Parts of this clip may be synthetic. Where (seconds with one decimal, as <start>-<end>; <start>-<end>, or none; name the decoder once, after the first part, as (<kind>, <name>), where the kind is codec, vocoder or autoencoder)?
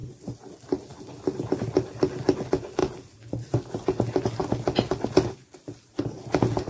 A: 0.0-0.5 (vocoder, BigVGAN v2); 0.9-1.5; 2.8-3.5